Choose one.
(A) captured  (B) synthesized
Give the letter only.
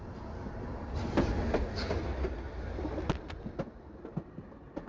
A